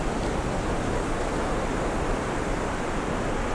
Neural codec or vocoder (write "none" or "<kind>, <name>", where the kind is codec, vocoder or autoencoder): none